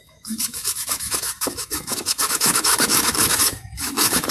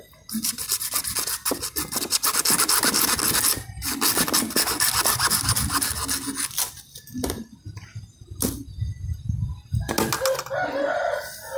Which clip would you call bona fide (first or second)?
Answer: second